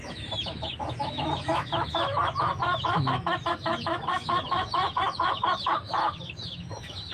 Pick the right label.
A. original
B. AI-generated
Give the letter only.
B